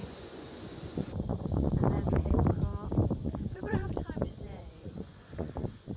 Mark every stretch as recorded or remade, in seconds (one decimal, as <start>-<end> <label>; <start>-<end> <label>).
0.0-2.4 remade; 2.4-3.2 recorded; 3.2-6.0 remade